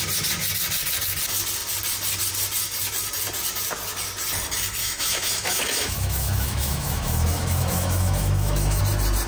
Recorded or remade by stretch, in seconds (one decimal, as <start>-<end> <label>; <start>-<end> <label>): 0.0-4.8 recorded; 4.8-8.8 remade; 8.8-9.3 recorded